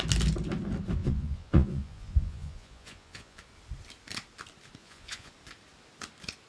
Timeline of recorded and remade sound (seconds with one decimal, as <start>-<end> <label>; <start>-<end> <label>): 0.0-1.0 recorded; 1.0-3.4 remade; 3.4-4.8 recorded; 4.8-5.3 remade; 5.3-6.5 recorded